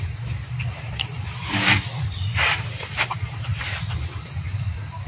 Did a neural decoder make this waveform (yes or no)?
yes